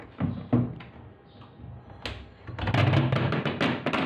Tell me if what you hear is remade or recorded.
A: recorded